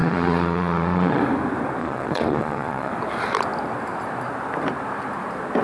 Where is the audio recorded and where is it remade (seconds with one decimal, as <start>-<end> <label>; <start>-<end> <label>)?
0.0-1.2 remade; 1.2-1.8 recorded; 1.8-2.9 remade; 2.9-5.6 recorded